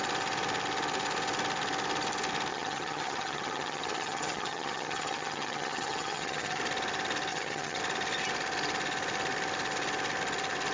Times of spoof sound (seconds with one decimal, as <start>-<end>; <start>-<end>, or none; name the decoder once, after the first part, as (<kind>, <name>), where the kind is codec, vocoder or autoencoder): 2.5-6.6 (vocoder, HiFi-GAN); 7.3-7.8